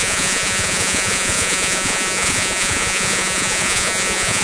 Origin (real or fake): fake